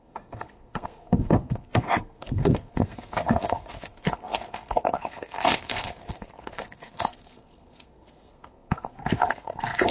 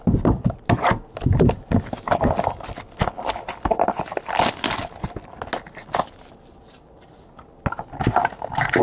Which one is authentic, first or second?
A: second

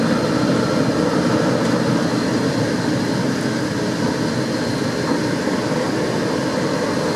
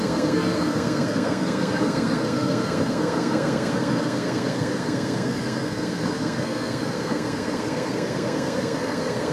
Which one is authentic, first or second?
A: first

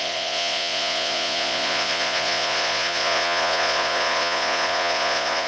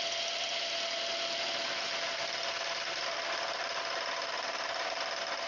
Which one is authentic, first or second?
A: second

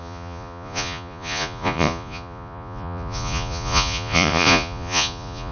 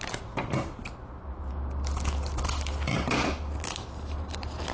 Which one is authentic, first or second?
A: second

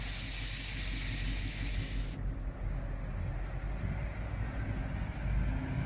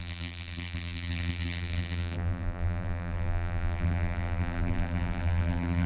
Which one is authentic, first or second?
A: first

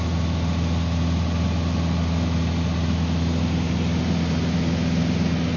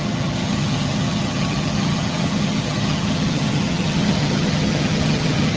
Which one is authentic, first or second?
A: first